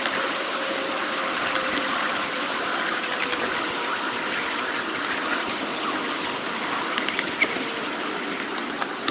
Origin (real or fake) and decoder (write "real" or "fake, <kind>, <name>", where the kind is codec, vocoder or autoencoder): real